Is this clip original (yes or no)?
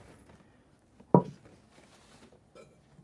yes